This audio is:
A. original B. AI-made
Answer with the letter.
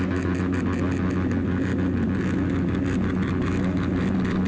A